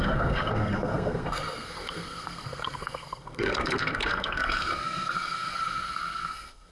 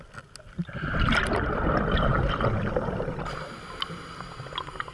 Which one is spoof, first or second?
first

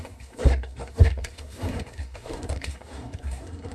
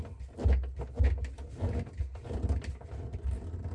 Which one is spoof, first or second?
first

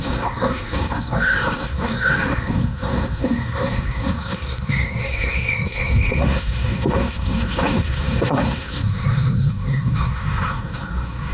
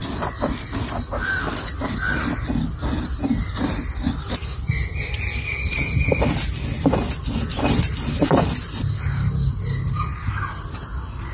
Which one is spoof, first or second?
first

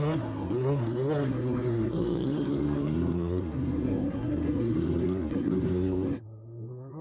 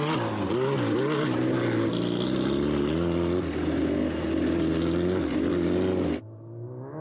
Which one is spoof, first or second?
first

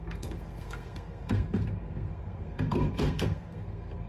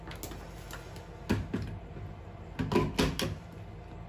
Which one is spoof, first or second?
first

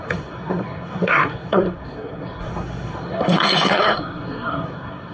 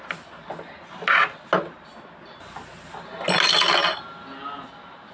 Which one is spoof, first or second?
first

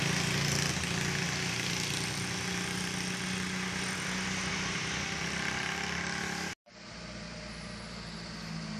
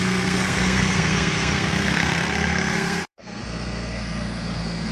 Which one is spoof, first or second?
second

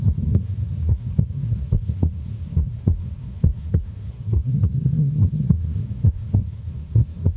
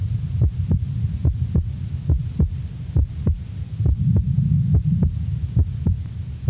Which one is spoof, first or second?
first